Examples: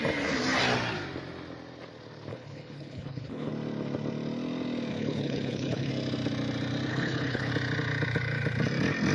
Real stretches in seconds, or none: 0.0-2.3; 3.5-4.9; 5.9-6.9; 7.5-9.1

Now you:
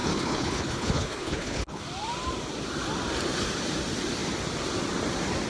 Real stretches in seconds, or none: 1.8-5.5

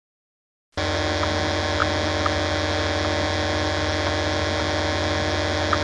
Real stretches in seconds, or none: 0.0-5.8

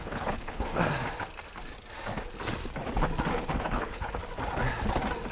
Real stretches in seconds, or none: 0.7-3.6; 4.2-5.3

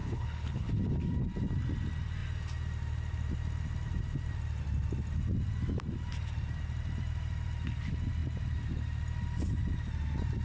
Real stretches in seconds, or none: 0.7-10.4

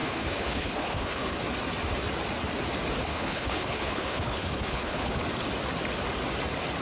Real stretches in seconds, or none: 1.4-3.1; 5.2-6.8

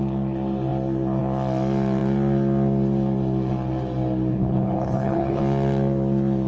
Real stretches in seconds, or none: 0.0-4.3; 5.4-6.5